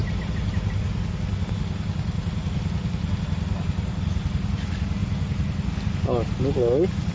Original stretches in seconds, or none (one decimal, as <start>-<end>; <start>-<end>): 0.0-5.0; 5.9-7.1